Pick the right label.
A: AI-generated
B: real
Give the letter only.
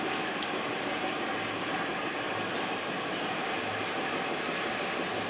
B